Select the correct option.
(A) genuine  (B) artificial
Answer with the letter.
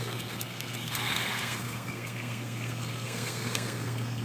B